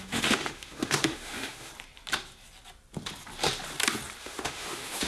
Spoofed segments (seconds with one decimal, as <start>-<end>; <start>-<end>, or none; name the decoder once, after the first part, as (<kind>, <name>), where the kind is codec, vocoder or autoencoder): 0.0-1.7 (autoencoder, DAC-VAE); 4.2-5.1